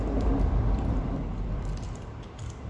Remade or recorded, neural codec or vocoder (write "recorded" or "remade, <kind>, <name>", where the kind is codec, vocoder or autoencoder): remade, vocoder, BigVGAN v2